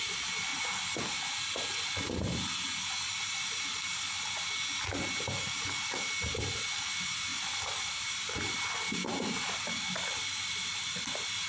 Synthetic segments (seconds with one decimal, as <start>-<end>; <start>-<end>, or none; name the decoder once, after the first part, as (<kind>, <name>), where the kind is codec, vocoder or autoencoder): none

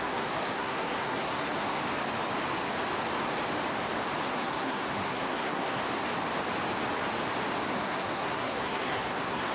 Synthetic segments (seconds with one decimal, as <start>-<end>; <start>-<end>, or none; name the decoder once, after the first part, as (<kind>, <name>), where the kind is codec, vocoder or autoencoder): 0.0-1.8 (codec, SNAC); 4.2-5.8; 7.7-9.5